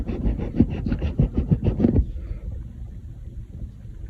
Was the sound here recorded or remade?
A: recorded